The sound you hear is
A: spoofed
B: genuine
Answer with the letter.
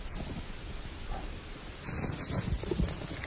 B